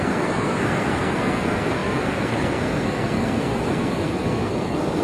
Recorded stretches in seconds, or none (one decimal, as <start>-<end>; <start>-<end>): none